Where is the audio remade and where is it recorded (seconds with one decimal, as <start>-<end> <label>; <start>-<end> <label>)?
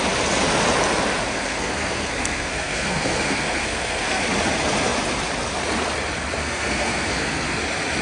0.0-1.3 recorded; 1.3-4.2 remade; 4.2-6.4 recorded; 6.4-7.6 remade; 7.6-8.0 recorded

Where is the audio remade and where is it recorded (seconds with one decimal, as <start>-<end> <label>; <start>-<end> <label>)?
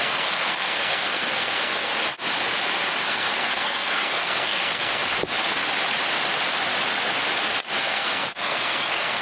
0.0-1.9 remade; 1.9-3.0 recorded; 3.0-5.0 remade; 5.0-7.8 recorded; 7.8-9.2 remade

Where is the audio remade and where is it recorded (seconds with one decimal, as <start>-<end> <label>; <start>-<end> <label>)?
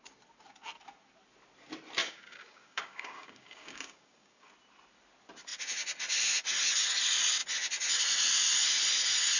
0.0-2.0 recorded; 2.0-4.5 remade; 4.5-9.4 recorded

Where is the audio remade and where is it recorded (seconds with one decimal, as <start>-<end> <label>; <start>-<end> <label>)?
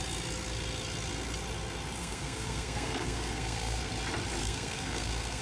0.0-2.0 recorded; 2.0-3.9 remade; 3.9-4.4 recorded; 4.4-5.4 remade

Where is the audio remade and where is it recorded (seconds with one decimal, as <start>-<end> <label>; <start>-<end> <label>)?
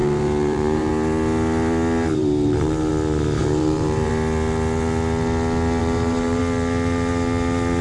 0.0-0.9 remade; 0.9-2.2 recorded; 2.2-2.9 remade; 2.9-3.4 recorded; 3.4-4.1 remade; 4.1-5.8 recorded; 5.8-6.4 remade; 6.4-7.8 recorded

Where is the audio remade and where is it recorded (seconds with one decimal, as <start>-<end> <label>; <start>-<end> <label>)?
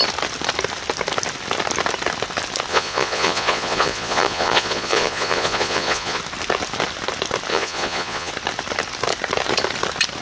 0.0-2.7 recorded; 2.7-6.2 remade; 6.2-7.5 recorded; 7.5-8.3 remade; 8.3-10.2 recorded